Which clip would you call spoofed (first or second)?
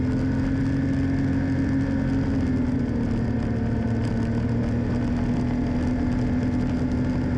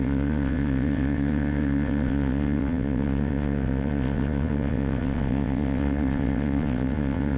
second